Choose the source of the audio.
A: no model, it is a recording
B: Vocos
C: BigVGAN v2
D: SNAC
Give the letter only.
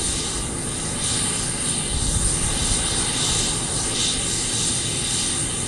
A